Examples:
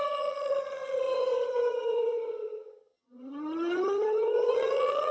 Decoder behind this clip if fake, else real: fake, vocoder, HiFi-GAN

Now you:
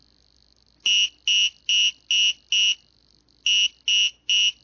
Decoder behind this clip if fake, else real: real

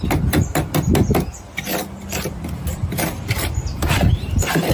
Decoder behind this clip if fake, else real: fake, vocoder, BigVGAN v2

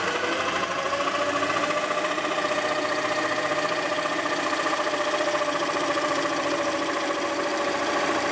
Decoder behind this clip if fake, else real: fake, vocoder, BigVGAN v2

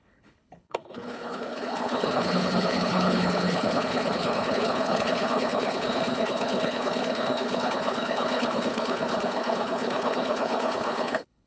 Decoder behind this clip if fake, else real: fake, codec, HILCodec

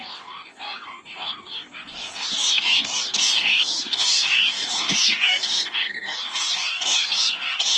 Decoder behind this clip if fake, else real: fake, codec, DAC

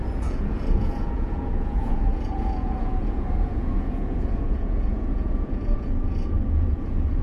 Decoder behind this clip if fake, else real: fake, vocoder, Vocos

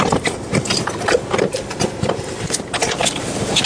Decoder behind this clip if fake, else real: fake, vocoder, BigVGAN v2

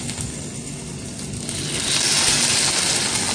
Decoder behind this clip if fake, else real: real